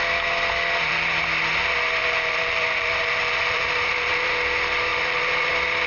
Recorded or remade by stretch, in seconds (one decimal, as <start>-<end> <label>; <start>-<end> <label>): 0.0-2.0 recorded; 2.0-4.3 remade; 4.3-4.9 recorded; 4.9-5.5 remade; 5.5-5.9 recorded